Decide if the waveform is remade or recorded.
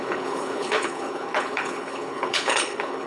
remade